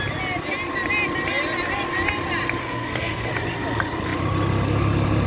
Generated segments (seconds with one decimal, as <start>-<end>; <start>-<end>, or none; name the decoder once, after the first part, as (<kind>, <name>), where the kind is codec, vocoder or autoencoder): 2.6-3.3 (codec, SNAC)